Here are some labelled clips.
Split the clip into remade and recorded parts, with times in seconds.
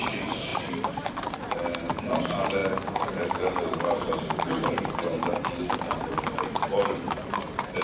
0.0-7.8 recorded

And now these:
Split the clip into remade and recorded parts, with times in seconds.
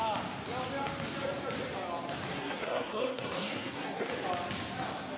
0.0-2.3 recorded; 2.3-4.1 remade; 4.1-5.2 recorded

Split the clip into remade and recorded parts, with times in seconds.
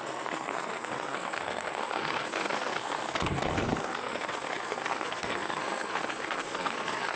0.0-7.2 remade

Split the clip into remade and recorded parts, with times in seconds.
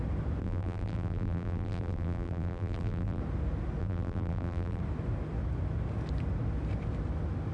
0.0-0.4 recorded; 0.4-3.2 remade; 3.2-3.8 recorded; 3.8-4.8 remade; 4.8-7.5 recorded